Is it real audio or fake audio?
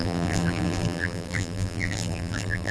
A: fake